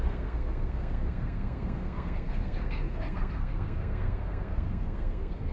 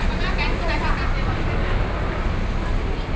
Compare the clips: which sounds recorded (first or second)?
second